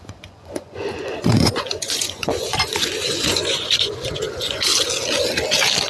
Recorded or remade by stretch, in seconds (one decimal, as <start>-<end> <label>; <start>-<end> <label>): 0.0-4.7 remade; 4.7-5.9 recorded